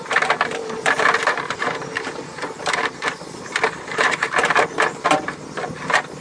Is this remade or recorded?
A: remade